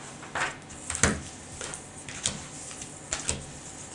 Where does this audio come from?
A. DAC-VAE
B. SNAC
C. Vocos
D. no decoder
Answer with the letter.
D